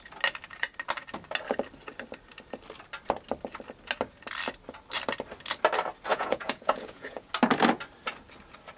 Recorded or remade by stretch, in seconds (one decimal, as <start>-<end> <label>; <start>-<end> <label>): 0.0-6.1 recorded; 6.1-7.3 remade; 7.3-8.8 recorded